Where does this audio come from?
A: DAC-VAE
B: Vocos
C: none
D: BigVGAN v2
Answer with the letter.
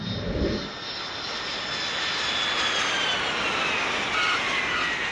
C